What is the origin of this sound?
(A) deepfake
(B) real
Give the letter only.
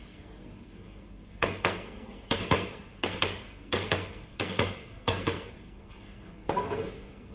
A